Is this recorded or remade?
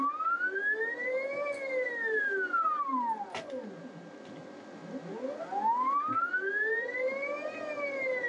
recorded